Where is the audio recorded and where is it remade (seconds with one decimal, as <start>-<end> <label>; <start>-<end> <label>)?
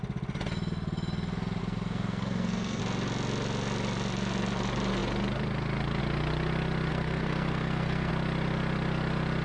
0.0-1.6 recorded; 1.6-2.8 remade; 2.8-6.9 recorded; 6.9-8.1 remade; 8.1-9.4 recorded